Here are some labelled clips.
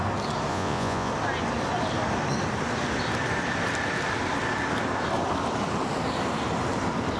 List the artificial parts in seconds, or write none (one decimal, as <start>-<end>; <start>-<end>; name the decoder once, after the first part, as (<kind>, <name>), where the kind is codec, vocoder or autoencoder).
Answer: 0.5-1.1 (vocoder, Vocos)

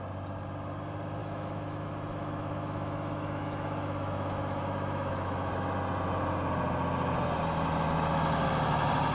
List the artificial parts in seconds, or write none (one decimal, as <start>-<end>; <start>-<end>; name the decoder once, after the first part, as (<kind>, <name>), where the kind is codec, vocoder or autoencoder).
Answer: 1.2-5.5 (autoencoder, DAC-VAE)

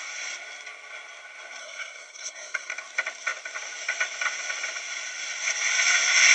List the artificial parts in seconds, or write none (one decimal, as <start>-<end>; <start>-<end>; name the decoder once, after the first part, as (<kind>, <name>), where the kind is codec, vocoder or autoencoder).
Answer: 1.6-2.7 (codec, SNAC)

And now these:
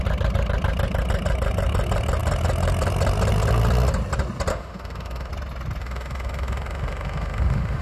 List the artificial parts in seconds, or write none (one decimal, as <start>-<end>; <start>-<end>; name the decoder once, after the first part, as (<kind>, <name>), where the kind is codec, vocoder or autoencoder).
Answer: 4.5-5.3 (autoencoder, DAC-VAE); 5.8-7.8

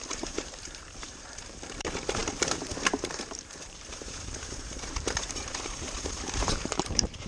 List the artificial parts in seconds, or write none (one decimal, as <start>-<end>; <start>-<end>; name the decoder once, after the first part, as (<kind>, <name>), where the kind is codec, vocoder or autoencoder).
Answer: 0.0-7.3 (vocoder, BigVGAN v2)

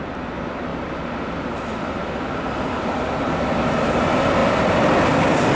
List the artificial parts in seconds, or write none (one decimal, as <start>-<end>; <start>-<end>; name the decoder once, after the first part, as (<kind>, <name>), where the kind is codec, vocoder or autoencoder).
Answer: none